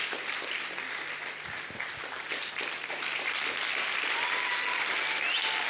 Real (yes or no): yes